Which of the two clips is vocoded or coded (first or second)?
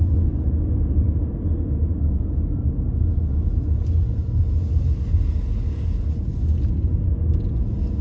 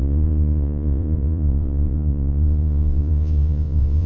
second